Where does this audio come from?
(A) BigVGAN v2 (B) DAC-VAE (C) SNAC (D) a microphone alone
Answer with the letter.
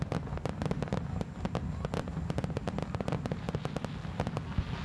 D